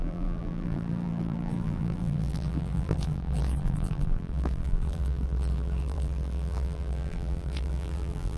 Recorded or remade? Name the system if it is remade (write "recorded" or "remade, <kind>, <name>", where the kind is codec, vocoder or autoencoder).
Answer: remade, vocoder, BigVGAN v2